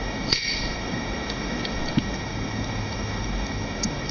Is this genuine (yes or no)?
no